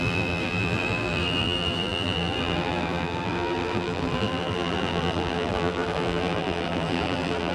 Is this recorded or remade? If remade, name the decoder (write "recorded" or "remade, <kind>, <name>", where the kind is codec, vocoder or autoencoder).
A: remade, vocoder, BigVGAN v2